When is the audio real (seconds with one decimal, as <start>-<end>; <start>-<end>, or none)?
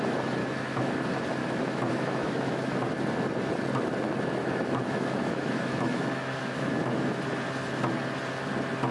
0.0-0.4; 0.9-1.4; 2.9-4.4; 7.2-8.9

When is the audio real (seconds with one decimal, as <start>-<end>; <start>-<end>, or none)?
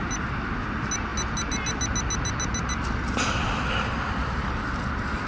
0.0-5.3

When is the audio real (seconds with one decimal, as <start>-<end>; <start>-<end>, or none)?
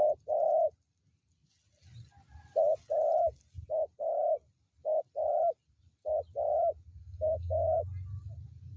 0.0-7.0; 7.8-8.8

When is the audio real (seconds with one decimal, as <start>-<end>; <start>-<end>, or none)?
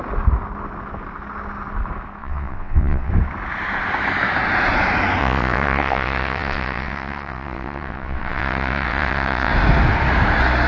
0.0-2.2; 3.1-5.2; 9.5-10.7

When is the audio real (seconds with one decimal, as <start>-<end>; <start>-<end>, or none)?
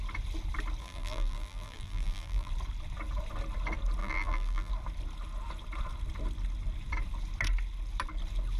0.0-0.8; 2.5-4.0; 4.7-8.6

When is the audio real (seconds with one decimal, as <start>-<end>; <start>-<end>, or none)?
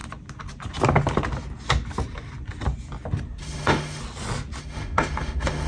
0.0-3.4; 4.0-4.6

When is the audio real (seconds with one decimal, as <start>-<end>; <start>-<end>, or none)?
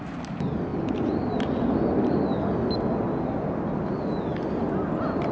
0.0-5.3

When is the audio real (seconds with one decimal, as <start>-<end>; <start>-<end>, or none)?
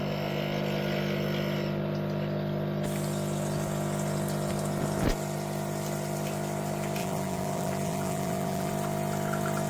0.0-7.0; 8.7-9.7